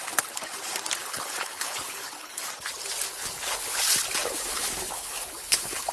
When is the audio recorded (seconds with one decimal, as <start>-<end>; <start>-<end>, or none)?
0.0-1.0; 2.4-3.1; 3.8-4.2